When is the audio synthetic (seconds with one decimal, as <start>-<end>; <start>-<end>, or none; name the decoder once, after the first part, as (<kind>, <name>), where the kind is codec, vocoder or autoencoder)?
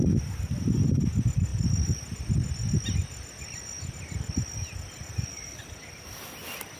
none